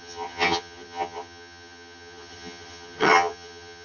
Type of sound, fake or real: fake